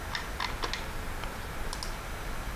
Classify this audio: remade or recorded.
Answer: recorded